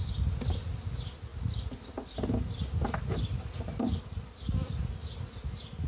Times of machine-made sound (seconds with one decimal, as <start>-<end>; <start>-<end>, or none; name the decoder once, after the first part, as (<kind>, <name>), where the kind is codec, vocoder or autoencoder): 1.3-4.8 (vocoder, BigVGAN v2)